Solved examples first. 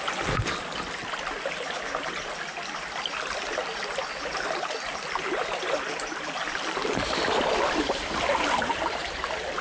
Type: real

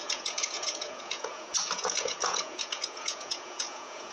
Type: fake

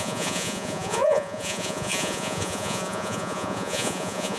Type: fake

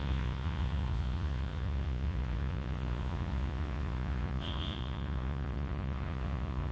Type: fake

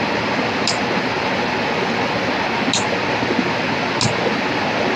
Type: real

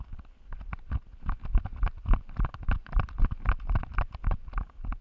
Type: real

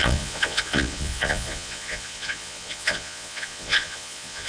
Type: fake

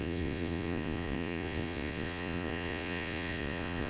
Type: fake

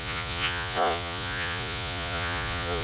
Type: fake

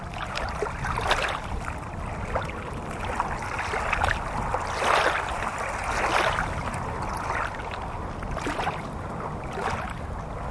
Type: real